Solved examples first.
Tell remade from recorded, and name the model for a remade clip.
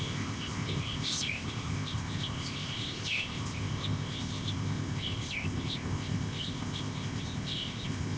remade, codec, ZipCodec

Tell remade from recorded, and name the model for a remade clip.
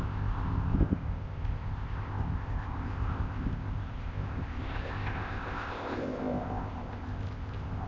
remade, codec, ZipCodec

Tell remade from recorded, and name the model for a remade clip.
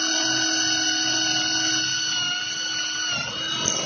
recorded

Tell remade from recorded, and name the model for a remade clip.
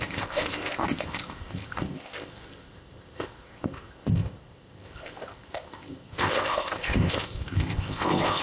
remade, codec, ZipCodec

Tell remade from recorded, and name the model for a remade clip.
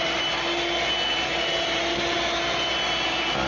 recorded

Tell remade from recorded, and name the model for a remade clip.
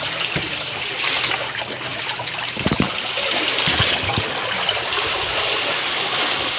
recorded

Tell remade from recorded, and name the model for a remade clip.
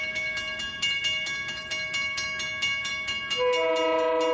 recorded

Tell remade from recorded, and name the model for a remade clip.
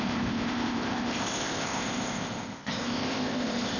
remade, codec, ZipCodec